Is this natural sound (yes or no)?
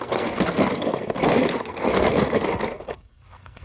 no